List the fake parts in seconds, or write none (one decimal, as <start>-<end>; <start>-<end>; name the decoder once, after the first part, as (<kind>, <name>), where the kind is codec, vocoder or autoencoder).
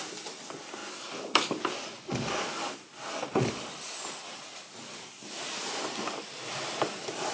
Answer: none